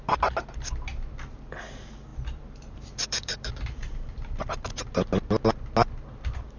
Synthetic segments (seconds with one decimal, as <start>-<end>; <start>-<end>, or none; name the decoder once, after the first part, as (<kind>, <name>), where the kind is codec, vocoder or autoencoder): 2.1-4.5 (vocoder, BigVGAN v2)